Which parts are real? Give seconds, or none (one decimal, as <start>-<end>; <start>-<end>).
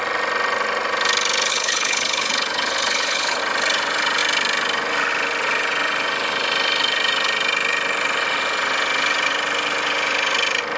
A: 0.0-1.5; 3.4-10.8